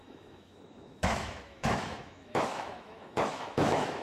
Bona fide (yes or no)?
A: no